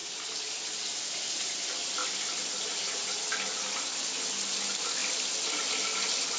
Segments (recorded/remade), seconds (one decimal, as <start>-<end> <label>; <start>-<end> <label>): 0.0-6.4 recorded